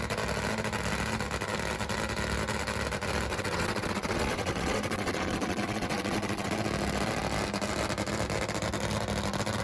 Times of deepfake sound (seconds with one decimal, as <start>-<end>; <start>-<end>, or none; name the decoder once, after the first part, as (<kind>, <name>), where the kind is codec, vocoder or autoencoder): 3.3-6.5 (vocoder, WaveNeXt)

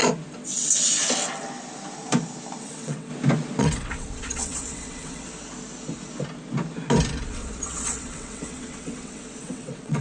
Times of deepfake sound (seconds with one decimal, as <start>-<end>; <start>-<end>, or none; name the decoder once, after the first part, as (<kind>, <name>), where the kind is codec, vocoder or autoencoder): 2.6-3.1 (vocoder, WaveNeXt); 3.6-5.3; 7.1-10.0

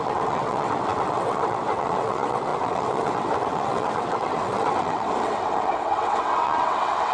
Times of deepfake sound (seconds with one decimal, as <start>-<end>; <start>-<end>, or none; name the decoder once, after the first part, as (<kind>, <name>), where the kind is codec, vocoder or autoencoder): 0.0-7.1 (vocoder, WaveNeXt)

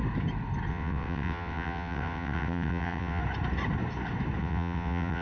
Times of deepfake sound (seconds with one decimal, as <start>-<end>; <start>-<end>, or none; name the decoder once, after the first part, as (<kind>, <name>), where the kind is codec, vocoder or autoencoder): 0.7-3.2 (vocoder, WaveNeXt); 4.4-5.2

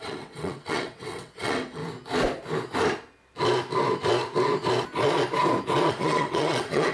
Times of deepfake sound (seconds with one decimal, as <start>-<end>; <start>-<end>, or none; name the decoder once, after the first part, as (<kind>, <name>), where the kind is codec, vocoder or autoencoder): 0.0-1.8 (vocoder, WaveNeXt); 5.9-6.9

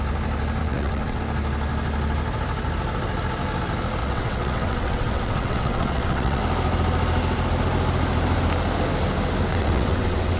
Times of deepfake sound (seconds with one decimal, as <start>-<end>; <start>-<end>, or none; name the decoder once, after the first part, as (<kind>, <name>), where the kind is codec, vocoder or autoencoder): 0.6-1.2 (vocoder, WaveNeXt); 4.0-6.4; 9.5-10.4